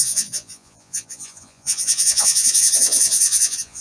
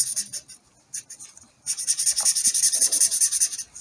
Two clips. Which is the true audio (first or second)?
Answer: second